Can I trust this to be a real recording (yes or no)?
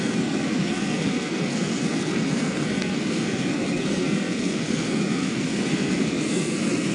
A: no